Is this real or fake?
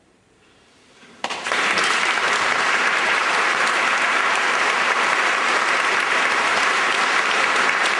fake